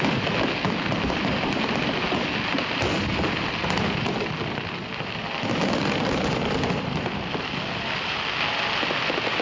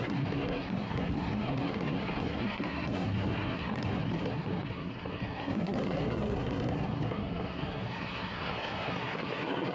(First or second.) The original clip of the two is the first